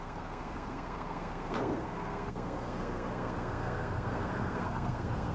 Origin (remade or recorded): remade